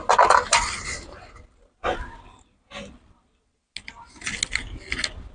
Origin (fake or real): real